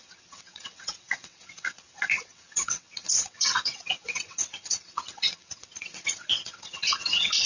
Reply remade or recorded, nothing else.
remade